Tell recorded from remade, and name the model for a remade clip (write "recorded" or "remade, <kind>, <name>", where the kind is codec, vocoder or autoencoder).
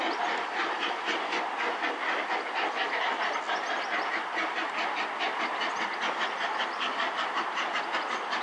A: recorded